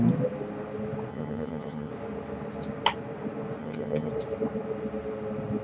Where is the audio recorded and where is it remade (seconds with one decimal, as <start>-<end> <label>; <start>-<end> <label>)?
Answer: 0.0-1.1 recorded; 1.1-1.9 remade; 1.9-3.6 recorded; 3.6-4.1 remade; 4.1-5.6 recorded